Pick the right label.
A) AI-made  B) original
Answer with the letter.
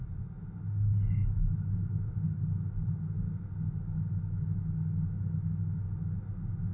B